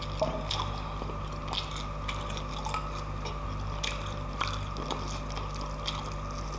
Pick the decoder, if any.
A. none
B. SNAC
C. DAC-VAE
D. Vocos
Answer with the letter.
A